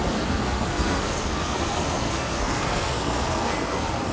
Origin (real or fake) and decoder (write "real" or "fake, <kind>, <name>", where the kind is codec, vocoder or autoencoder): fake, codec, SNAC